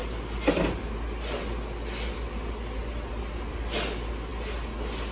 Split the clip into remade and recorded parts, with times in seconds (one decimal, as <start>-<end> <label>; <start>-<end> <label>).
0.0-5.1 recorded